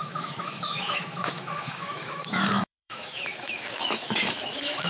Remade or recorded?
remade